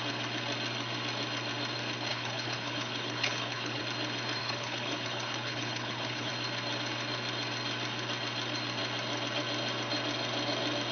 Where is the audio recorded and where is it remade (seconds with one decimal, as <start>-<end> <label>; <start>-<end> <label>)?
0.0-2.1 recorded; 2.1-3.8 remade; 3.8-4.4 recorded; 4.4-6.3 remade; 6.3-10.9 recorded